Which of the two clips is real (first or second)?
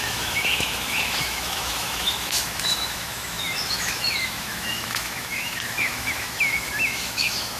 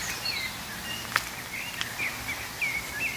second